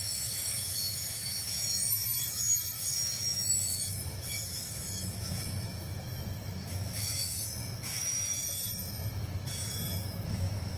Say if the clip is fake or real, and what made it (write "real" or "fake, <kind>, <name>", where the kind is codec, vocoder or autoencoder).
fake, autoencoder, DAC-VAE